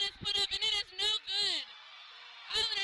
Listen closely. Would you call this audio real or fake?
real